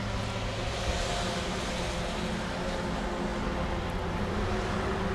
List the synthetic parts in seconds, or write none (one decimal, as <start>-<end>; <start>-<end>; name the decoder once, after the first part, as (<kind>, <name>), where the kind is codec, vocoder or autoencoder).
none